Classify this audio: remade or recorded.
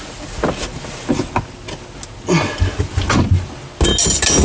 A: recorded